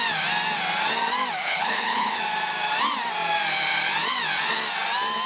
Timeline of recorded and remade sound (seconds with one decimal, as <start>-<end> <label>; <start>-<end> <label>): 0.0-1.4 recorded; 1.4-2.2 remade; 2.2-5.3 recorded